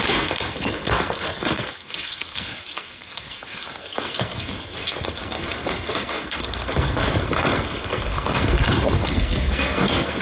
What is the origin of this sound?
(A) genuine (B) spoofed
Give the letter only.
B